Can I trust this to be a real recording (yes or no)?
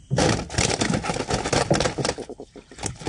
yes